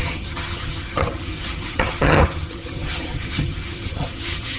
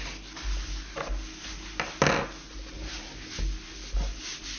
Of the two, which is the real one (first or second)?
second